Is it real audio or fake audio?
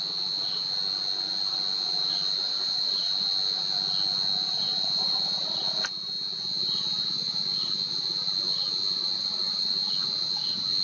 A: real